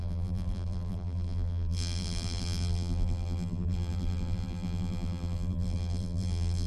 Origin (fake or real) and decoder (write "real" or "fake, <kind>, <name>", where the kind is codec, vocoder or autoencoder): fake, vocoder, BigVGAN v2